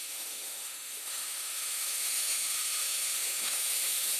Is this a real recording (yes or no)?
no